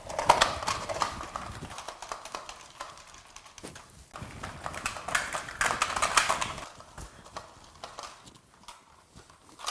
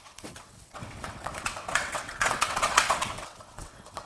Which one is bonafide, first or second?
first